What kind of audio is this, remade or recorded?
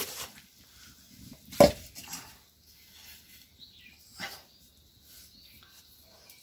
recorded